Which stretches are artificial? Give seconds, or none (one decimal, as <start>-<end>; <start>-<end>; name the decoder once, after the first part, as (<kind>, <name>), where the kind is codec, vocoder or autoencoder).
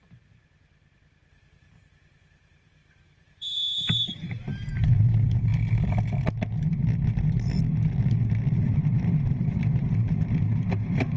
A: 0.0-5.5 (vocoder, BigVGAN v2); 8.6-11.2